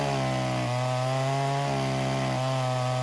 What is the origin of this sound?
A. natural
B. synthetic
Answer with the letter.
A